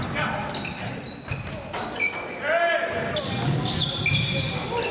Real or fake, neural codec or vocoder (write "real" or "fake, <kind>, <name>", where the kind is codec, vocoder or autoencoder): real